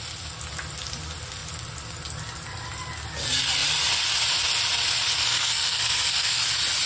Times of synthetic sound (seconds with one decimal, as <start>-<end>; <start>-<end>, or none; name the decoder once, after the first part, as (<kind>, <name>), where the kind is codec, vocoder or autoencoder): 5.2-6.4 (codec, SNAC)